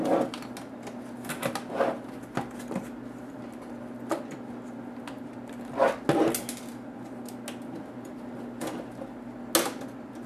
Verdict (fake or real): real